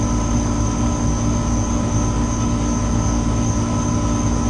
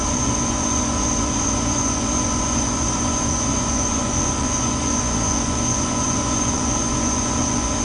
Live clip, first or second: first